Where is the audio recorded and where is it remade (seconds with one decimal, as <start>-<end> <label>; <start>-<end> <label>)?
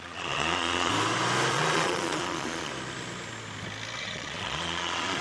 0.0-0.9 remade; 0.9-1.5 recorded; 1.5-2.7 remade; 2.7-4.0 recorded; 4.0-5.2 remade